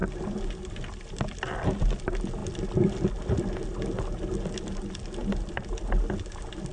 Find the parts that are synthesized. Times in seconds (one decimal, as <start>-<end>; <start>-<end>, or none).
none